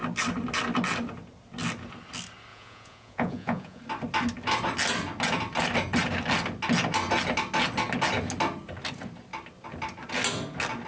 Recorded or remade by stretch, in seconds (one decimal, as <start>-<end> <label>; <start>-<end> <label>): 0.0-2.5 recorded; 2.5-3.8 remade; 3.8-10.9 recorded